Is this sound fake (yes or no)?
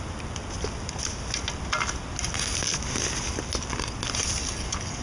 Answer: no